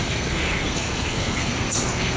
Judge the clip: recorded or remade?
remade